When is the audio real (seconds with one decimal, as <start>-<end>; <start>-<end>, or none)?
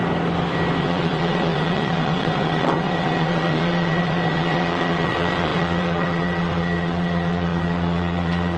0.0-0.8